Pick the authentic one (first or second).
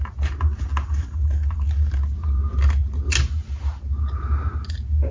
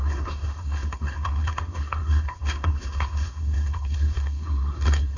first